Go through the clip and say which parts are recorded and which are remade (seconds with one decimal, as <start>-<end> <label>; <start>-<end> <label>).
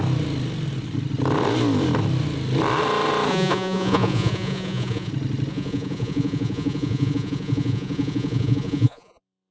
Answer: 0.0-3.3 recorded; 3.3-5.1 remade; 5.1-5.5 recorded; 5.5-9.5 remade